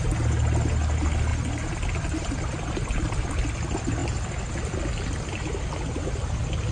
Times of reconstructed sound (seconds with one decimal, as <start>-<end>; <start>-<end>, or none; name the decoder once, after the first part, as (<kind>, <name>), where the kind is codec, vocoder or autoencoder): none